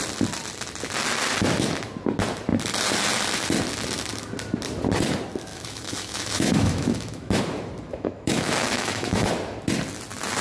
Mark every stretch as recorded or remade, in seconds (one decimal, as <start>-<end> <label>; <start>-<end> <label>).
0.0-5.5 recorded; 5.5-7.4 remade; 7.4-7.9 recorded; 7.9-9.3 remade; 9.3-10.4 recorded